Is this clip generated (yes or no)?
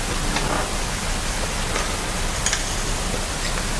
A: no